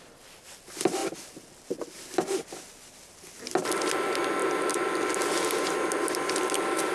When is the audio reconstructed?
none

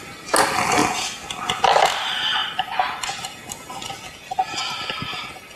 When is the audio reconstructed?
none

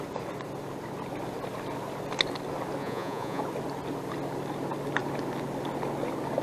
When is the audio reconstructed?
2.8-3.4

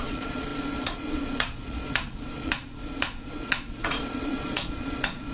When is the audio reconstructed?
0.0-5.3